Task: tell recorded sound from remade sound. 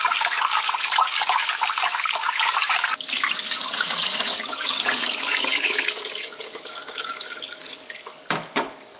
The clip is remade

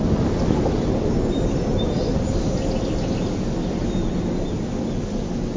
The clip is recorded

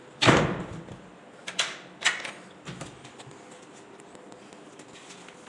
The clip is recorded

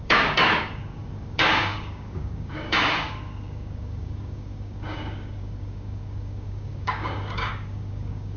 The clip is remade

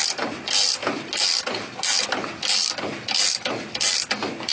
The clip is recorded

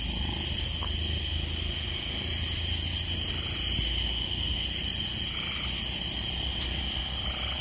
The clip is recorded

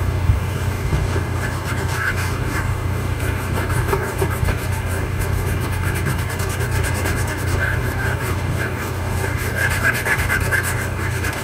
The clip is remade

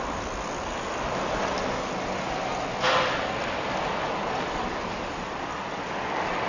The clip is recorded